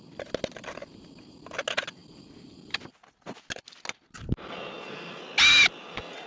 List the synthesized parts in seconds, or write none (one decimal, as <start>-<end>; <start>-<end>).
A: none